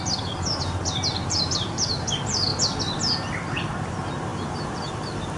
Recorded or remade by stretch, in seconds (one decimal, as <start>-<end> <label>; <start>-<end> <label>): 0.0-5.4 recorded